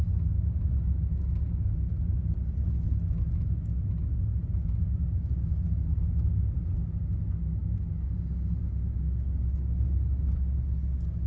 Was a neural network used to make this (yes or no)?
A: no